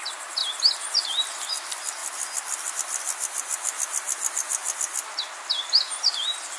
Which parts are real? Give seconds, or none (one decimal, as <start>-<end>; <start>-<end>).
0.0-6.6